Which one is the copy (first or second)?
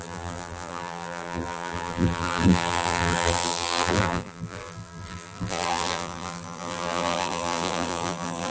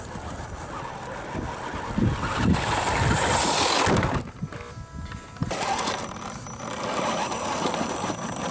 first